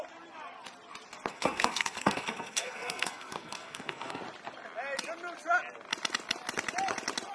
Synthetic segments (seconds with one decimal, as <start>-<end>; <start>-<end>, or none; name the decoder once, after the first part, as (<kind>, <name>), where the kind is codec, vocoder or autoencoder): 1.3-4.2 (codec, SNAC)